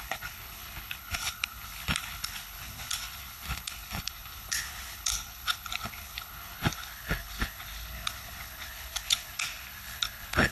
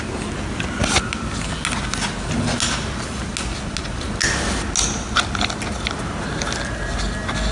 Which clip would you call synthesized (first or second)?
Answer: first